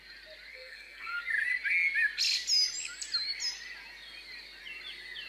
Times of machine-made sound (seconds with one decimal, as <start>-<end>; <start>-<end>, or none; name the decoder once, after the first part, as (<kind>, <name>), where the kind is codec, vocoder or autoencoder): 0.5-1.2 (codec, SNAC)

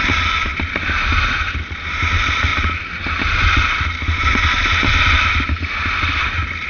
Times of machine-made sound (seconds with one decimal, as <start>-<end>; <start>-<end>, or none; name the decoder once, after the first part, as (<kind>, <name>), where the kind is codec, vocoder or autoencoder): none

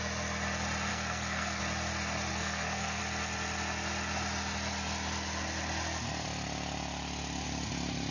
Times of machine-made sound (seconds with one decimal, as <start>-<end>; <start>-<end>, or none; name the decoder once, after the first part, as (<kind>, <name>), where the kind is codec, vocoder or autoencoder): 0.9-1.6 (codec, SNAC); 2.3-3.0

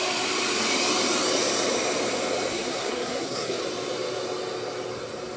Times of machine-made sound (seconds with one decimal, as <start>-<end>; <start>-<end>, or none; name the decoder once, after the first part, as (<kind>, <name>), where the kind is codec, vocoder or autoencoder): 2.5-3.6 (codec, SNAC)

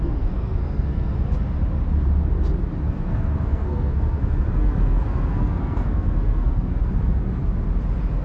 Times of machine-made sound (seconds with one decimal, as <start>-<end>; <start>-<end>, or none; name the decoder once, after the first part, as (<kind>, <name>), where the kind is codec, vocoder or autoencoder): 0.0-1.1 (codec, SNAC); 2.9-7.4

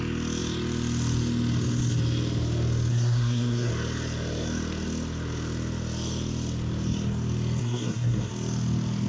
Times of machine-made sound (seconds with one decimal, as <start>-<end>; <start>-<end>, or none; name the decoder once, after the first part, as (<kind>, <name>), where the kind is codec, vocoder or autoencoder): 2.9-3.7 (codec, SNAC); 7.6-8.3